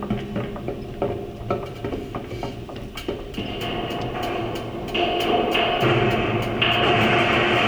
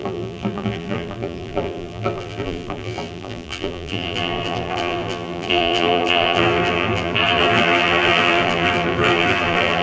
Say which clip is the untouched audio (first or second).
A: first